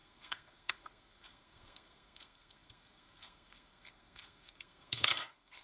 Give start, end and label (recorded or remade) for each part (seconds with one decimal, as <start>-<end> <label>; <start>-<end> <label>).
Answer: 0.0-5.6 remade